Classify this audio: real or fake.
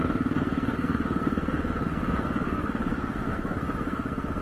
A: fake